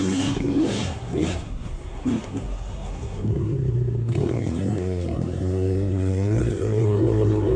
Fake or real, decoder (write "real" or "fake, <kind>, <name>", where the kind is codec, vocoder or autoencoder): fake, codec, SNAC